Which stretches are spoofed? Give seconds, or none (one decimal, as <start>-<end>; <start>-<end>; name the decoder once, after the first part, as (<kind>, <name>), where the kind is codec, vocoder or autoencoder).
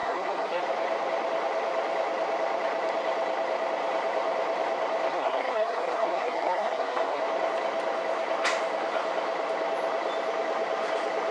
0.0-0.6 (codec, SNAC); 5.1-7.2